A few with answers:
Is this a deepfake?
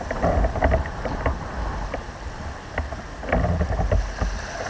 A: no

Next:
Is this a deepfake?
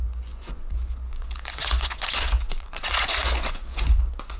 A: yes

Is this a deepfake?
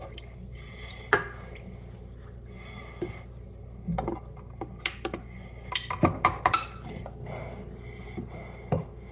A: no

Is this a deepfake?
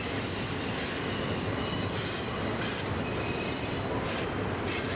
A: no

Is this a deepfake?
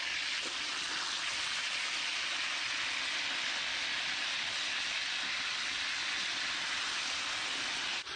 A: no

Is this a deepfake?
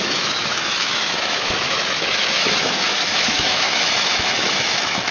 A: yes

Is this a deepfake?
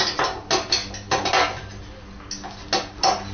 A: no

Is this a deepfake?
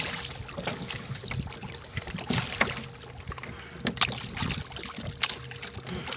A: no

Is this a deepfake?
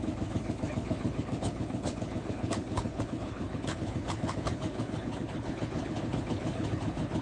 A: yes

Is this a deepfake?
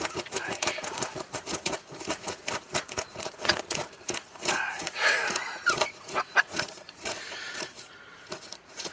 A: yes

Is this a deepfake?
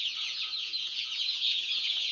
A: yes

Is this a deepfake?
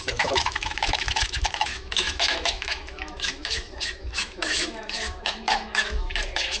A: yes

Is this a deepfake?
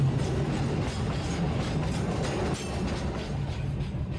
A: no